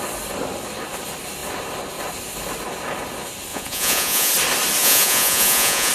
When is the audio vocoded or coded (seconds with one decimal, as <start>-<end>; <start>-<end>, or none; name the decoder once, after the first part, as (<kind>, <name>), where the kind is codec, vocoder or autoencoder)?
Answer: 3.5-4.3 (vocoder, Vocos); 4.8-5.9